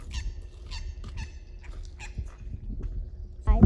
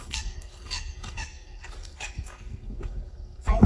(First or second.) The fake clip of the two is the second